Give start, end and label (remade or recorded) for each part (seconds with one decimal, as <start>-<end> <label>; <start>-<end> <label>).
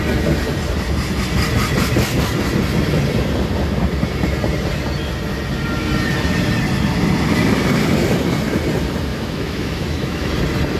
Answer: 0.0-9.1 recorded; 9.1-10.3 remade; 10.3-10.8 recorded